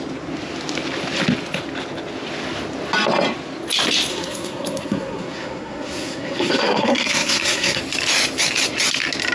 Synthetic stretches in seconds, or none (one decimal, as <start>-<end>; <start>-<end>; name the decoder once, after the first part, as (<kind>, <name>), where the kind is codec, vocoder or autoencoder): 4.1-7.8 (codec, SNAC)